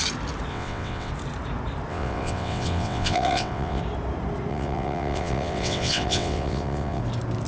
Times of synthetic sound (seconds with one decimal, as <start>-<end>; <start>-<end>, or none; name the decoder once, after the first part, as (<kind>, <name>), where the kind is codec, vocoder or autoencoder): 0.5-1.1 (vocoder, WaveNeXt); 1.9-3.8; 4.5-7.0